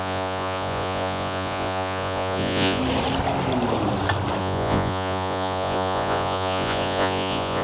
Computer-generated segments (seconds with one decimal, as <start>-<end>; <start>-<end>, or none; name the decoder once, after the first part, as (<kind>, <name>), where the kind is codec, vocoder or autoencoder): 0.0-2.8 (vocoder, Vocos); 4.4-7.6